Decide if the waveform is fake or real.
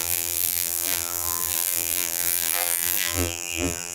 fake